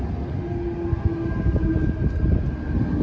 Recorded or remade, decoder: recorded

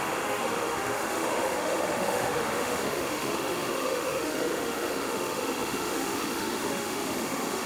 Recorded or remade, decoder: remade, autoencoder, DAC-VAE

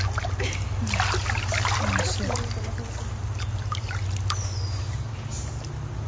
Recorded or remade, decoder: recorded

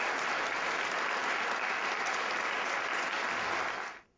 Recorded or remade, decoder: recorded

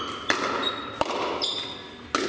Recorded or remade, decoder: recorded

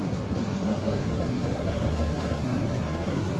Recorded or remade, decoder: remade, codec, SNAC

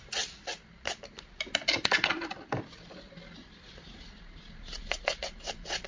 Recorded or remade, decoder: recorded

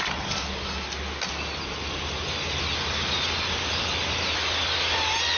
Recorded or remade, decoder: recorded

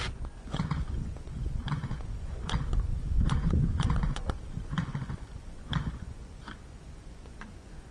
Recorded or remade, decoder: remade, vocoder, Vocos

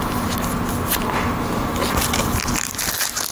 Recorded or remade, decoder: recorded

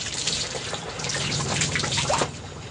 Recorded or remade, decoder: remade, vocoder, BigVGAN v2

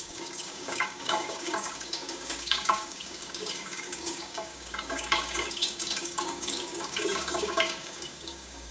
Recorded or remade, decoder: remade, codec, DAC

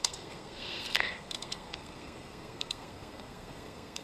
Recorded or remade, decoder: remade, codec, SNAC